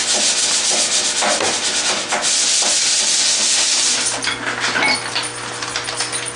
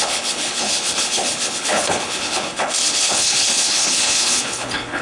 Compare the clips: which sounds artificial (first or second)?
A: second